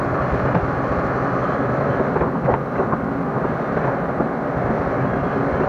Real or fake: real